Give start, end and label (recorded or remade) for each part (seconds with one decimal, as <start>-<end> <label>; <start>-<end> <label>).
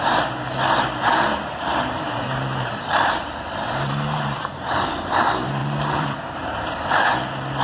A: 0.0-1.3 recorded; 1.3-4.9 remade; 4.9-5.6 recorded; 5.6-6.8 remade; 6.8-7.6 recorded